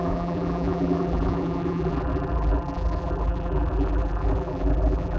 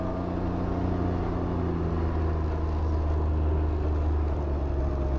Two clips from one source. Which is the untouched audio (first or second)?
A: second